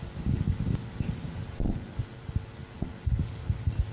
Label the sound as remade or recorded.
recorded